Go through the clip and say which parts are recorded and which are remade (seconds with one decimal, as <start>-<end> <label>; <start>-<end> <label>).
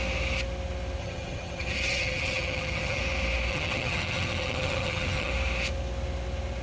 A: 0.0-1.0 recorded; 1.0-3.0 remade; 3.0-3.5 recorded; 3.5-5.3 remade; 5.3-6.6 recorded